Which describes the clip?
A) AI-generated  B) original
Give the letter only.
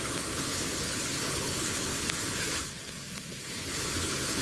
A